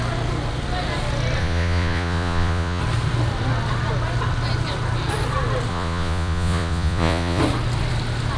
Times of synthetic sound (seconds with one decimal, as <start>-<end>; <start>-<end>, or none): 1.4-2.8; 5.7-7.4